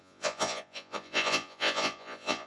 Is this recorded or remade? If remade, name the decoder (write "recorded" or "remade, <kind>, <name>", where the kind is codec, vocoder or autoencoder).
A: remade, vocoder, Vocos